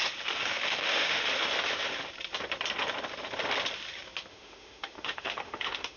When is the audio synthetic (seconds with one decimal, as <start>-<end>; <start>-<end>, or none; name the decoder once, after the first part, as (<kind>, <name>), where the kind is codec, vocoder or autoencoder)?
0.5-1.2 (autoencoder, DAC-VAE); 4.3-6.0